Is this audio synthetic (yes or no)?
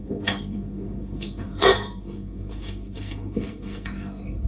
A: yes